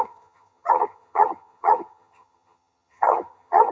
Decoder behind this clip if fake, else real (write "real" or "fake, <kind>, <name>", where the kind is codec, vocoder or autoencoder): fake, vocoder, HiFi-GAN